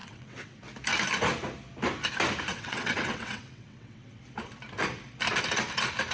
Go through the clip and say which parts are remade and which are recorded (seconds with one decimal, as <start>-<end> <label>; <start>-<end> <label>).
0.0-0.6 remade; 0.6-2.5 recorded; 2.5-4.2 remade; 4.2-6.1 recorded